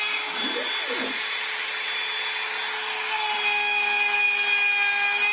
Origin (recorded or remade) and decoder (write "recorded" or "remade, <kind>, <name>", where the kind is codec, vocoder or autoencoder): recorded